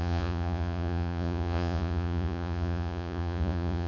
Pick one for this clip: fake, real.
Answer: fake